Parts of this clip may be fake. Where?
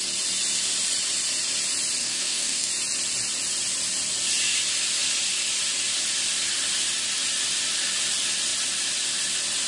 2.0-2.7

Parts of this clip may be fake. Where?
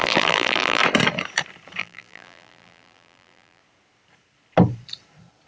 0.0-0.8; 1.8-3.6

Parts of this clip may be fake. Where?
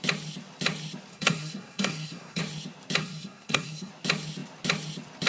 1.1-2.4; 3.0-3.9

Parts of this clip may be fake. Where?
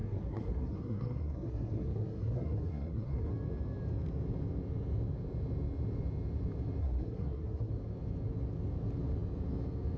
0.0-3.3; 6.8-7.7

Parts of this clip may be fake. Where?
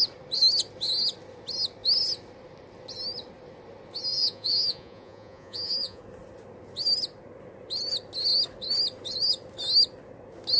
4.1-6.0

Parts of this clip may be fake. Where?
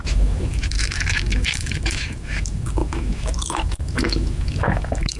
0.0-5.2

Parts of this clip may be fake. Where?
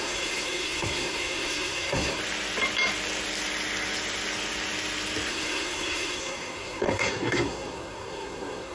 0.0-2.2; 5.3-8.7